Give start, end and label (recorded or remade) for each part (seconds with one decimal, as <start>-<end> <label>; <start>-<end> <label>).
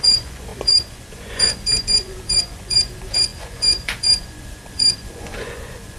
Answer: 0.0-6.0 remade